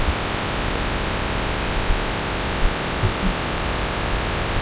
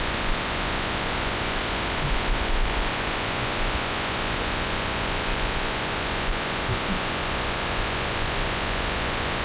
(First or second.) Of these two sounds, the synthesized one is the second